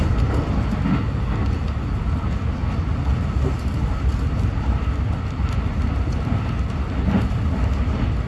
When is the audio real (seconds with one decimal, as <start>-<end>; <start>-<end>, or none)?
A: 0.0-8.3